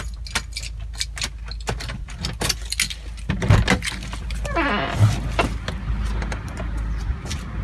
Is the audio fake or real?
real